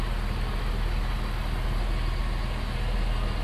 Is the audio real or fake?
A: real